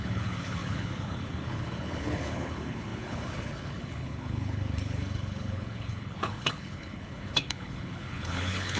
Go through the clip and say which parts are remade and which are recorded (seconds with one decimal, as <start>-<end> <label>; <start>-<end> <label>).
0.0-8.8 remade